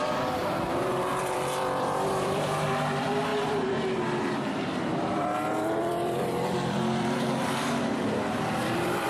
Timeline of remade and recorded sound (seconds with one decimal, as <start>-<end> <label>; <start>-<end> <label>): 0.0-0.4 remade; 0.4-1.1 recorded; 1.1-9.1 remade

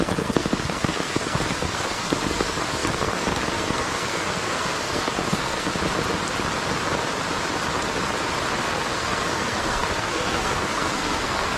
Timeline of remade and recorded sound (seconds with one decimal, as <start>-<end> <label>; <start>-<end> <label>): 0.0-5.7 remade; 5.7-8.6 recorded; 8.6-11.6 remade

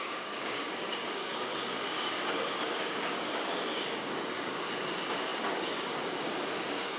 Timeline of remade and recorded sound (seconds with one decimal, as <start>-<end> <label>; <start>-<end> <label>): 0.0-7.0 remade

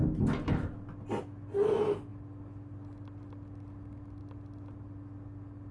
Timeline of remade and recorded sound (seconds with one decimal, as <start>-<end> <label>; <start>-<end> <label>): 0.0-5.7 recorded

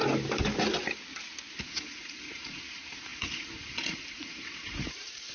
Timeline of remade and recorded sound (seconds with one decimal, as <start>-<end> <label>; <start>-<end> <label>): 0.0-1.6 recorded; 1.6-5.3 remade

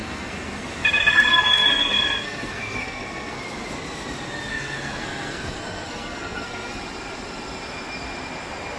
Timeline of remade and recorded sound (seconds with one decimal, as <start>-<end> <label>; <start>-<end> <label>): 0.0-3.4 remade; 3.4-4.5 recorded; 4.5-6.8 remade; 6.8-8.8 recorded